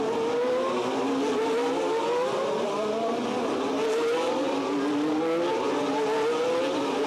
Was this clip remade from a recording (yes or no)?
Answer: no